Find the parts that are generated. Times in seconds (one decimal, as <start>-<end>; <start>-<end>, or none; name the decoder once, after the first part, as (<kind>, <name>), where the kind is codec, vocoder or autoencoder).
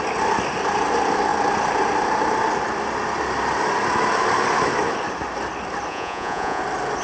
5.9-6.6 (vocoder, Vocos)